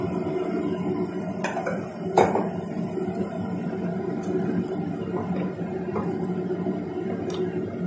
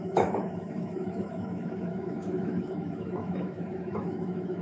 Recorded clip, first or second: first